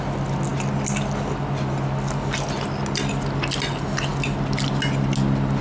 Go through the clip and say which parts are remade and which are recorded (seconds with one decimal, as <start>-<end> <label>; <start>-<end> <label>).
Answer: 0.0-5.6 recorded